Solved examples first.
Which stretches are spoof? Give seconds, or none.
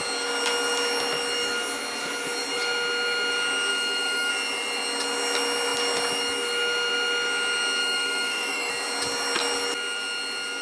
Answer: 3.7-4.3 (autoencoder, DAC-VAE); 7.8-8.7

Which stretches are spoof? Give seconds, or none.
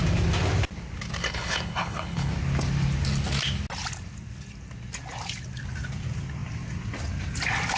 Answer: 1.2-2.3 (codec, HILCodec)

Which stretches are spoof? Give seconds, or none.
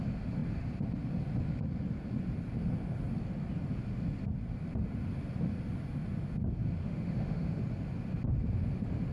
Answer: 6.8-7.6 (autoencoder, DAC-VAE)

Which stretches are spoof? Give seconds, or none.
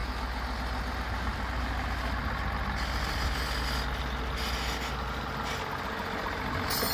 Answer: none